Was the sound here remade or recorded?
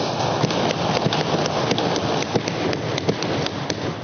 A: recorded